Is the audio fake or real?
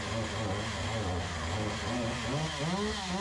real